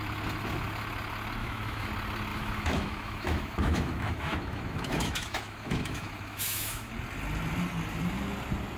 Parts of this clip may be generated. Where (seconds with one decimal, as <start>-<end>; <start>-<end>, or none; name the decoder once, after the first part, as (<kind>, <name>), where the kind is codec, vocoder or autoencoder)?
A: 1.4-1.9 (autoencoder, DAC-VAE); 2.3-6.9